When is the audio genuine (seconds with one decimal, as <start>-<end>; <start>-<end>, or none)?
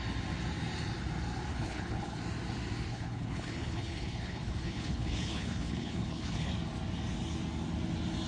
0.0-1.5; 2.2-2.9; 6.5-8.3